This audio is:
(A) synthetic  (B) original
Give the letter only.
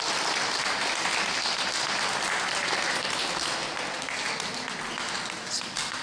B